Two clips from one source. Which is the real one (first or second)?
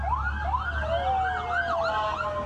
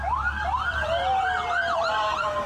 first